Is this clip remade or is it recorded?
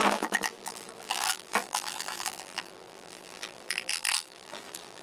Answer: remade